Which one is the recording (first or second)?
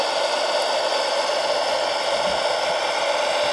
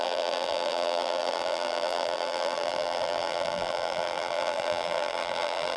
first